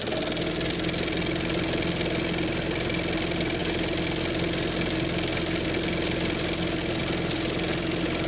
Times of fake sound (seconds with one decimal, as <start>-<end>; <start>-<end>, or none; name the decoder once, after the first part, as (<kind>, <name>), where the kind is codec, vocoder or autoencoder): none